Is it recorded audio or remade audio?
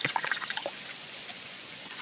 remade